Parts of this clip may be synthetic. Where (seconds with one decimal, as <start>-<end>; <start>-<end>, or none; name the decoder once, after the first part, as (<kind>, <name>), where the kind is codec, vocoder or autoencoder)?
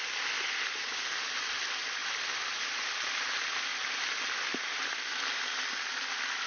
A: none